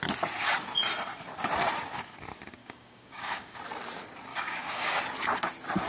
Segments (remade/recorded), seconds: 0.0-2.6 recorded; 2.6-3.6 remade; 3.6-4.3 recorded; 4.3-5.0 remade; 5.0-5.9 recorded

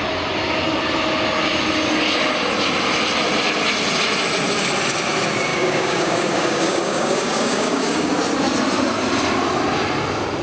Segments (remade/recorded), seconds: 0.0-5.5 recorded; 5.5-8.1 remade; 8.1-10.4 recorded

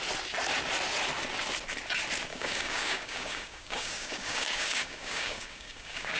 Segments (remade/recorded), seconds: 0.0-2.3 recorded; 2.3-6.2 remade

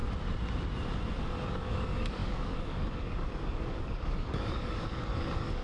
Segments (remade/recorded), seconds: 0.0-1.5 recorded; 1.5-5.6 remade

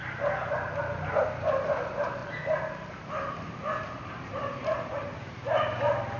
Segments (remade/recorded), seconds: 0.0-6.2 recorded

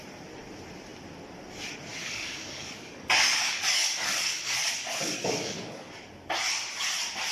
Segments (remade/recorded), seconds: 0.0-2.0 recorded; 2.0-5.9 remade; 5.9-7.3 recorded